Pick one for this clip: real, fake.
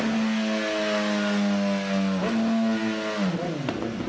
real